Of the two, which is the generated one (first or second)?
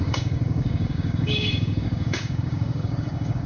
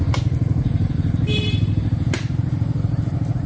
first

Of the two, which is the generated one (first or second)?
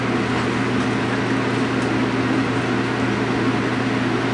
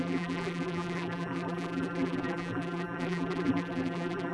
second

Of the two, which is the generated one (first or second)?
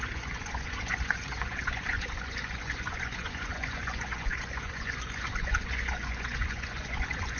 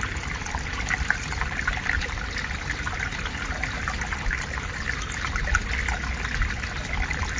first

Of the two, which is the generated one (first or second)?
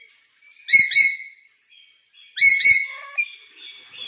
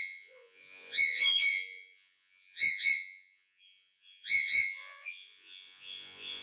second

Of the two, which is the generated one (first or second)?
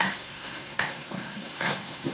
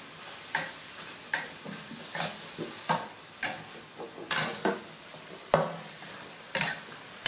first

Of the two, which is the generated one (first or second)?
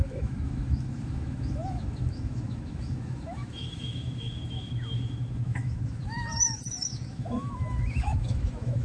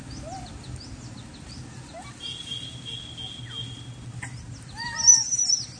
first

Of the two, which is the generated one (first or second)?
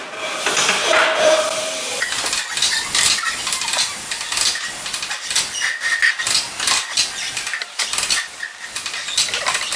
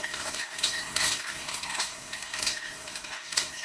second